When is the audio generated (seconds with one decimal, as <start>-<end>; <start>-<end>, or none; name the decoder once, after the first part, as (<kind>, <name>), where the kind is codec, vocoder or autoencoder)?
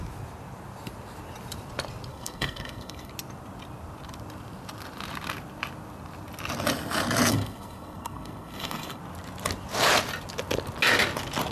2.1-3.1 (codec, SNAC); 7.3-9.0